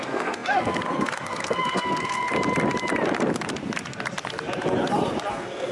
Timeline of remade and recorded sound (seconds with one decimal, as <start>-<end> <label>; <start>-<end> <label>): 0.0-2.3 remade; 2.3-5.3 recorded; 5.3-5.7 remade